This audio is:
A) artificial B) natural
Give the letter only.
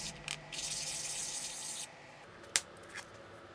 B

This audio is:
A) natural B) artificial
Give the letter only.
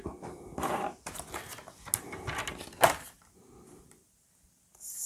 A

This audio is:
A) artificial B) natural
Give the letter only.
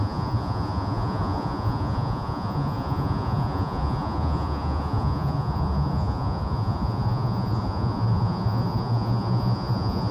A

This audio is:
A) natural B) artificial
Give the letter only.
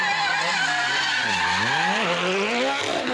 A